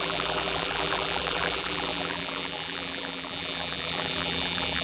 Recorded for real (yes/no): no